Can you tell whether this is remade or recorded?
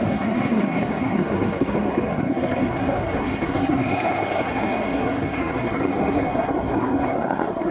remade